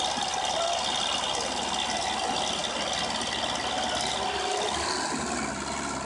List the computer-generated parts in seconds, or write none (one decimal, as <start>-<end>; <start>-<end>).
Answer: none